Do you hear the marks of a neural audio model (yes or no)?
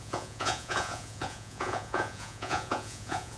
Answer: yes